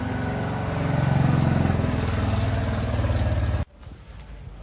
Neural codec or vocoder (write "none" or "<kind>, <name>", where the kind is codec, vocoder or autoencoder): none